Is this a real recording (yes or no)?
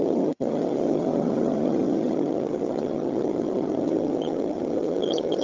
no